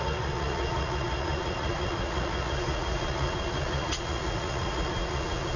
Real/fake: fake